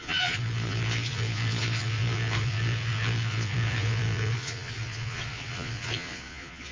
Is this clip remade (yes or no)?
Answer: yes